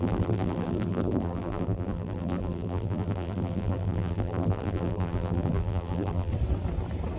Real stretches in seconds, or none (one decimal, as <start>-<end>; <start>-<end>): 6.3-7.2